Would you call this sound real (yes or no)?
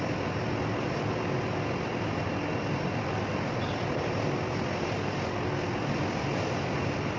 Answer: yes